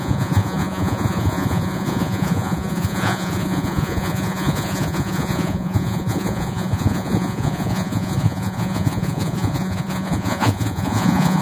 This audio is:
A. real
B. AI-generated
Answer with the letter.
B